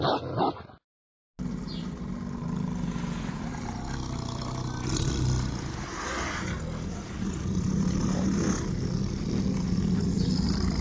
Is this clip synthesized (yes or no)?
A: no